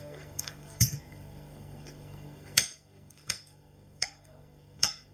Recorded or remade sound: remade